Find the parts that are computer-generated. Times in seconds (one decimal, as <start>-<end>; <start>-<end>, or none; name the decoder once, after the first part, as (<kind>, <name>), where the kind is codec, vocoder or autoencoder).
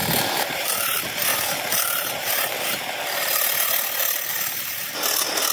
0.0-0.7 (vocoder, BigVGAN v2); 1.3-2.6; 4.3-4.9